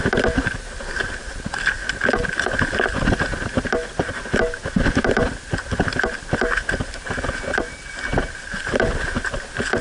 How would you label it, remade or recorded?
recorded